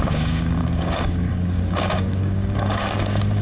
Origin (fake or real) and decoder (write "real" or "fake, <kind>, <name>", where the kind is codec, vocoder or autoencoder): fake, codec, DAC